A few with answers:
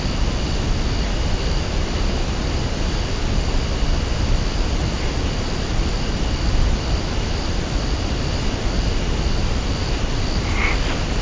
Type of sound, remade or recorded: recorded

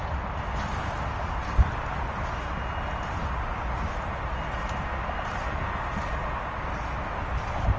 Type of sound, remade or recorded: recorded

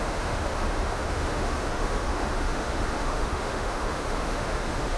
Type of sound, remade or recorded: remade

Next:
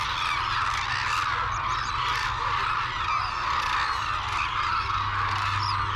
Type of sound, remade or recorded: recorded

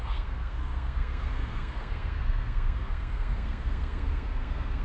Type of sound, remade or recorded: remade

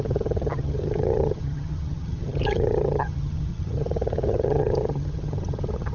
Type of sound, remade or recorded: remade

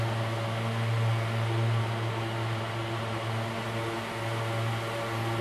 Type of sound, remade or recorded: recorded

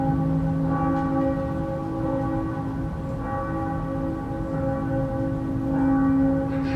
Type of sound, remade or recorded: recorded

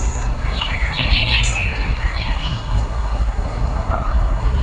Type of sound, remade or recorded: remade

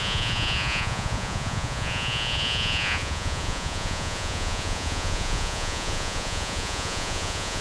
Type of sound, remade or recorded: remade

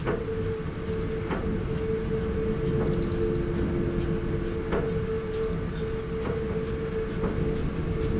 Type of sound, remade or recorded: recorded